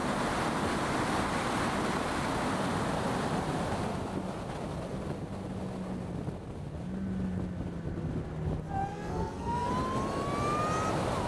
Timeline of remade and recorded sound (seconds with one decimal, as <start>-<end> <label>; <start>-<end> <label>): 0.0-8.9 recorded; 8.9-9.7 remade; 9.7-11.3 recorded